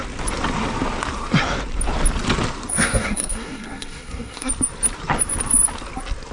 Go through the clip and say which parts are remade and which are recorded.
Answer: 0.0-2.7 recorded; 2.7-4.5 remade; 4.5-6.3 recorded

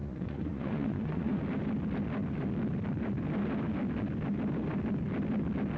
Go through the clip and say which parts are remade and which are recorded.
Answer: 0.0-1.4 remade; 1.4-5.8 recorded